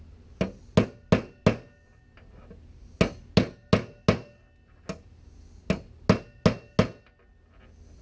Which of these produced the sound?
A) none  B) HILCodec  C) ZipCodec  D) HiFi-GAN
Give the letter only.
A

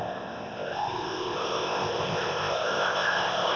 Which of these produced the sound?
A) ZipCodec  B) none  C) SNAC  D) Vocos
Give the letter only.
A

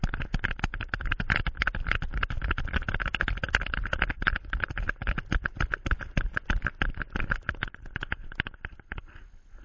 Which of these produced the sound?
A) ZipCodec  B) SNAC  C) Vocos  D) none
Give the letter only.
D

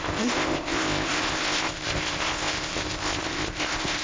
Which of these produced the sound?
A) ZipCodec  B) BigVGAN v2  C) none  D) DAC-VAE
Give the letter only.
A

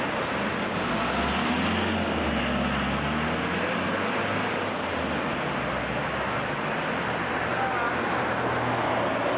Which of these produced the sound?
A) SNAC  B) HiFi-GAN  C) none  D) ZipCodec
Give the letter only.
C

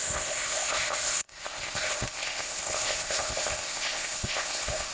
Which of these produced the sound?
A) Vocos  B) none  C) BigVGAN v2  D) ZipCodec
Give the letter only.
D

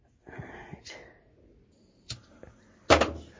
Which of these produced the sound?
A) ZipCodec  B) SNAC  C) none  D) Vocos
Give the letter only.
C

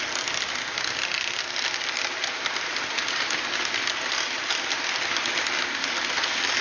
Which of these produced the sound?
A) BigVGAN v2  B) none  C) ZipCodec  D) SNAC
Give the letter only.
B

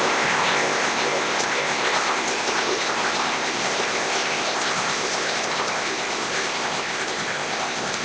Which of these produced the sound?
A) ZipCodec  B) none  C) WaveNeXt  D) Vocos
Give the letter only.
A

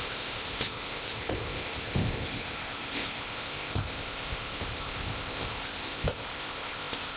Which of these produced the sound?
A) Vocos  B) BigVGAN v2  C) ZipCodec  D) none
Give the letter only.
C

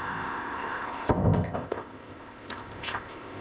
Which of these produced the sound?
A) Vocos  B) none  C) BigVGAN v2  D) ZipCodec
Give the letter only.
D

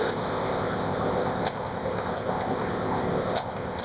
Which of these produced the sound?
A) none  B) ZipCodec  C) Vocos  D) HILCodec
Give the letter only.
B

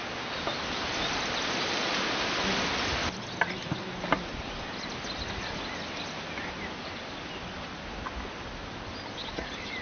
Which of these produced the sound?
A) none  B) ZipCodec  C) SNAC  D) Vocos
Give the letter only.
A